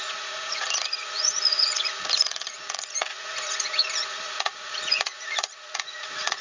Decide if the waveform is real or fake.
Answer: fake